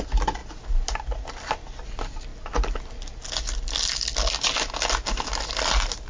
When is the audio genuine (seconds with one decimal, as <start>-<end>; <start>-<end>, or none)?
0.0-6.1